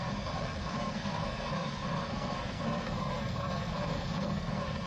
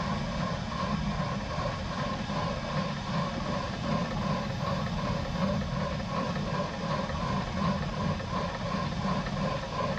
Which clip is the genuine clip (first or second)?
second